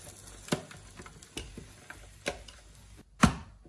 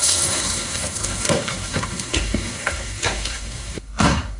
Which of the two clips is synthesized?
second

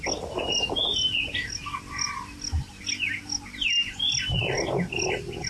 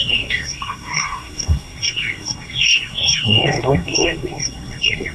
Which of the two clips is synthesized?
second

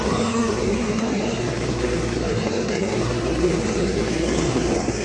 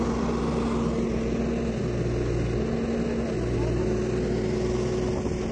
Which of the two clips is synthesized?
first